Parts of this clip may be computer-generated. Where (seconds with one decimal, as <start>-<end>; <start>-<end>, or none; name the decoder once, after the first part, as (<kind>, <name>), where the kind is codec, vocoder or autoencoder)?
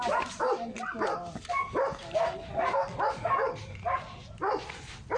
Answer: none